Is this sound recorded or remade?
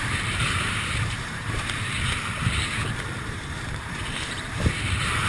remade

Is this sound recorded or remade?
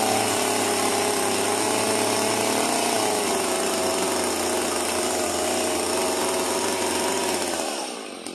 recorded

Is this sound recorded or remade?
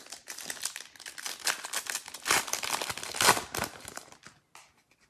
recorded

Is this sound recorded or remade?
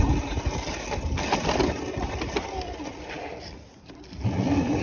recorded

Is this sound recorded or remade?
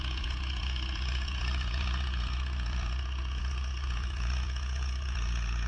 remade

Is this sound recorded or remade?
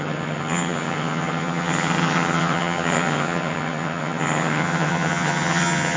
remade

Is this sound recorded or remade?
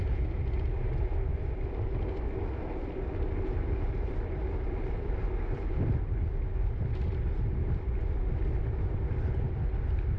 recorded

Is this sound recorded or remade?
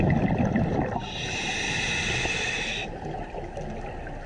recorded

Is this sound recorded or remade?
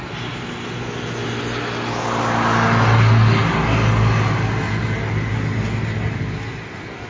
recorded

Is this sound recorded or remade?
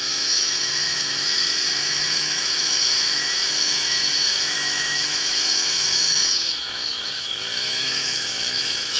remade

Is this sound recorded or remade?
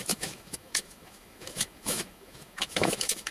remade